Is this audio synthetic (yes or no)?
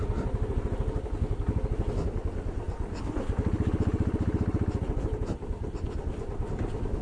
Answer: no